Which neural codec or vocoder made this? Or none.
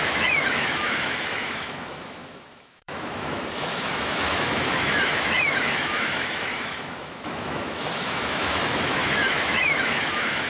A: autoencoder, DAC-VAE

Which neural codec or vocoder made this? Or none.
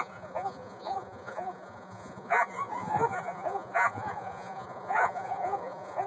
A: vocoder, Vocos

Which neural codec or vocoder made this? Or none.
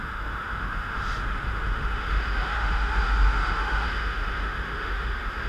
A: autoencoder, DAC-VAE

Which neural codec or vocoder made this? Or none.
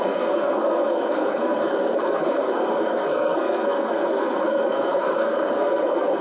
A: codec, SNAC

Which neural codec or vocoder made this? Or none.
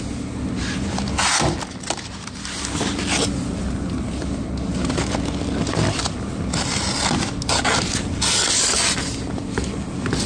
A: none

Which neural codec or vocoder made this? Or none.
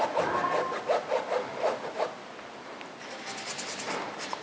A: none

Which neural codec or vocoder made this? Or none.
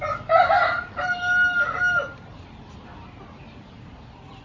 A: none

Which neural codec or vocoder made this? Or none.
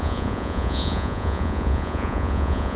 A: vocoder, Vocos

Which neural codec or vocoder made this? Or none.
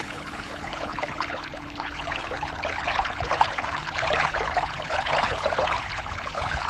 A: codec, HILCodec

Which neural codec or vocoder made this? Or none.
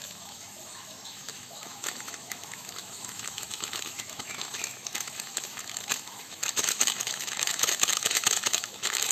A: autoencoder, DAC-VAE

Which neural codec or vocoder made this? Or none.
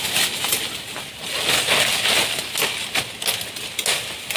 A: none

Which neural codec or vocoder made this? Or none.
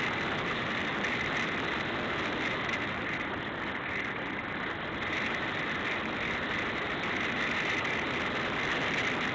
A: none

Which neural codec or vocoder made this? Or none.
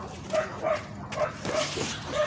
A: none